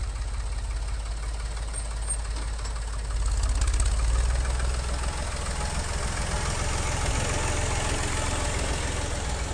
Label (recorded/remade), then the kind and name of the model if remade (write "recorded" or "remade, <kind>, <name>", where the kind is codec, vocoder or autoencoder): recorded